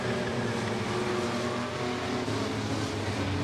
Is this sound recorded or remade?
recorded